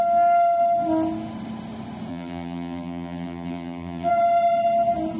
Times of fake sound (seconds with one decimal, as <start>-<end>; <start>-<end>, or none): 2.1-4.1